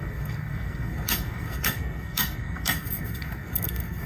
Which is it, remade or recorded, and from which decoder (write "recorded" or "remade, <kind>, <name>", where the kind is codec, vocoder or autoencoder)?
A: remade, codec, SNAC